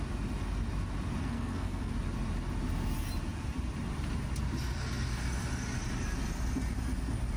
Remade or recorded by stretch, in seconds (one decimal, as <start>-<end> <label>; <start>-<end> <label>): 0.0-1.2 recorded; 1.2-1.9 remade; 1.9-7.4 recorded